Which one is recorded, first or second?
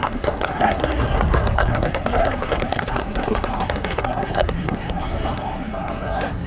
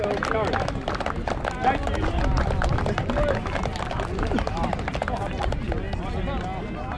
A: second